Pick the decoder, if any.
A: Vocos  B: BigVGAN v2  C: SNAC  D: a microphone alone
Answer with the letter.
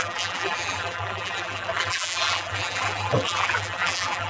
B